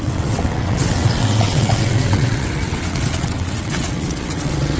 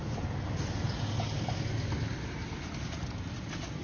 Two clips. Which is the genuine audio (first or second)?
second